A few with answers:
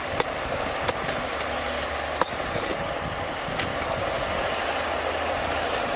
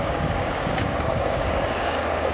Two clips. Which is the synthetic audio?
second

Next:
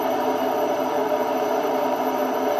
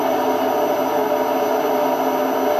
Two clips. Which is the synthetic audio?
first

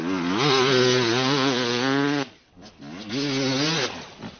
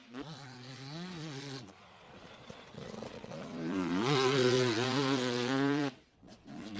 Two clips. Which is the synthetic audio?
second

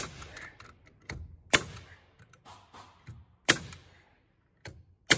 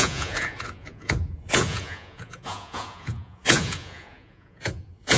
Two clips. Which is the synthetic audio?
second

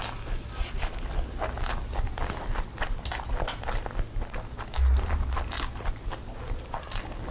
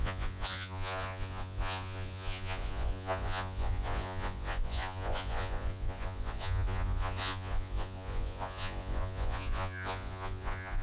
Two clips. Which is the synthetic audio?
second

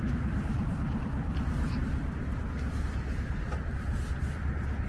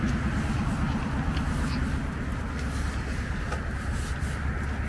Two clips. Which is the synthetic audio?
first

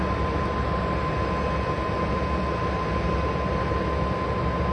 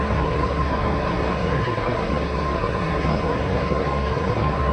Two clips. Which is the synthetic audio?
second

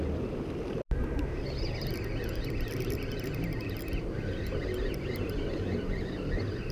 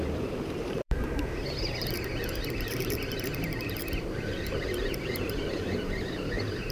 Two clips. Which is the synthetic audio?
second